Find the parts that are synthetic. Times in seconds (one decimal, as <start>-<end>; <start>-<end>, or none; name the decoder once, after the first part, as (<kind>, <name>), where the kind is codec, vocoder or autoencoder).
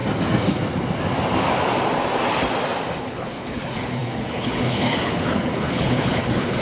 3.0-6.6 (codec, HILCodec)